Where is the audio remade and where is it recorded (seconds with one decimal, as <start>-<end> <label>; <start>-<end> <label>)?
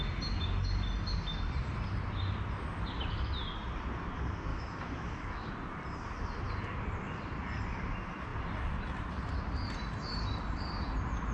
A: 0.0-4.5 recorded; 4.5-5.5 remade; 5.5-11.3 recorded